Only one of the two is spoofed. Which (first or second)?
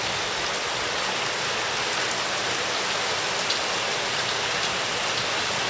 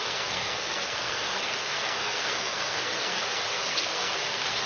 second